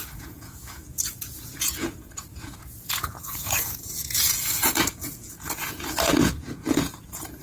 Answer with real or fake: fake